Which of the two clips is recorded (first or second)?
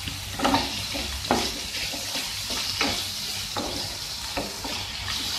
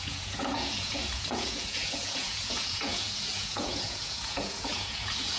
first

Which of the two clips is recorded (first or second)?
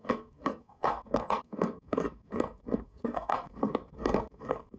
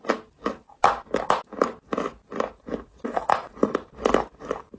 second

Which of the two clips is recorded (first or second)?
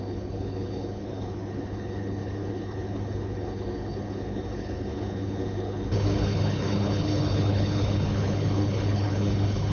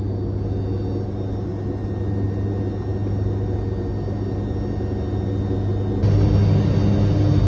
second